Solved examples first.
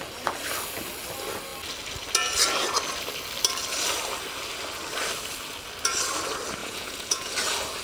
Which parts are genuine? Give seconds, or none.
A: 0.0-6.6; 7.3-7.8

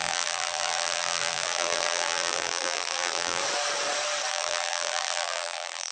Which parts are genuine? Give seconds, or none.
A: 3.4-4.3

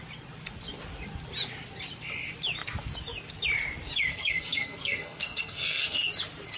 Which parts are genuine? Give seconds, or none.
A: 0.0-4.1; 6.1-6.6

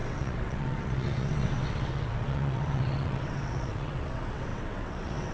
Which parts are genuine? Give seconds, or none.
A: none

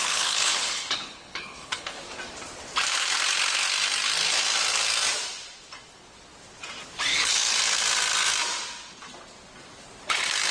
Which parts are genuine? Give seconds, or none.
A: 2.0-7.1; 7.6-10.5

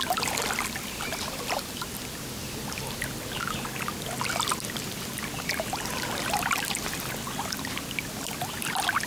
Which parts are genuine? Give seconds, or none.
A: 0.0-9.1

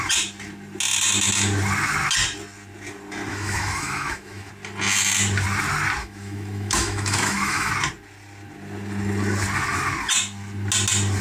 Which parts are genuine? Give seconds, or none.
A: 0.0-3.3; 4.5-6.0; 7.7-11.2